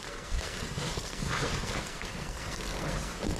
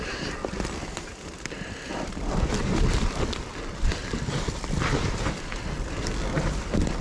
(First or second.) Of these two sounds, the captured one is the second